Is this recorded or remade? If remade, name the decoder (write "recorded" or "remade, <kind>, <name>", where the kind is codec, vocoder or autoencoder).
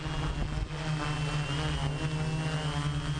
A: recorded